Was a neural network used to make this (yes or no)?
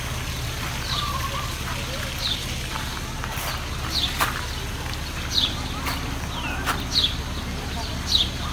no